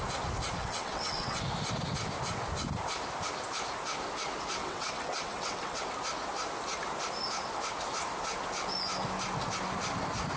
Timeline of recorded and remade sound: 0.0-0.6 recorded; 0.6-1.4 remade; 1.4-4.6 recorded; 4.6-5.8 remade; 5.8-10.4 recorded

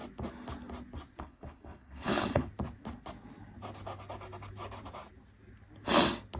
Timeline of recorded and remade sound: 0.0-1.2 recorded; 1.2-2.5 remade; 2.5-6.4 recorded

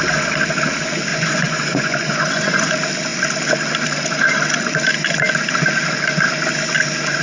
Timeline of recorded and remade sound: 0.0-1.1 recorded; 1.1-2.7 remade; 2.7-7.2 recorded